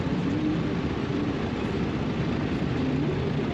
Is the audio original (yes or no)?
yes